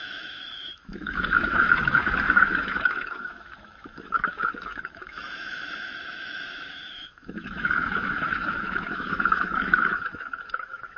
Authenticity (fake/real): fake